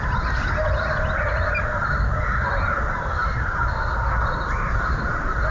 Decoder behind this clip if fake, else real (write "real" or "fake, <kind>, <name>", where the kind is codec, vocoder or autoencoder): real